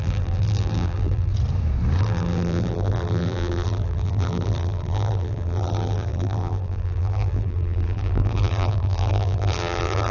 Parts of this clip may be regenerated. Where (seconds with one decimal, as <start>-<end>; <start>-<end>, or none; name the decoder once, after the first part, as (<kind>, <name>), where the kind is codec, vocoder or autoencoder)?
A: 0.0-1.3 (vocoder, BigVGAN v2); 2.0-10.1